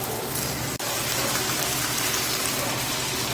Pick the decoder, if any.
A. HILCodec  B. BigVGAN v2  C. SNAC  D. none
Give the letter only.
D